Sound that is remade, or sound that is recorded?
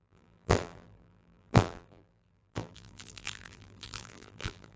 remade